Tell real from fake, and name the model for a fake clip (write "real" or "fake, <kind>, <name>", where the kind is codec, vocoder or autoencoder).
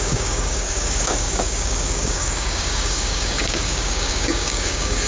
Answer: fake, codec, DAC